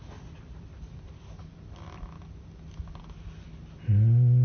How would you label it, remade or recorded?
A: recorded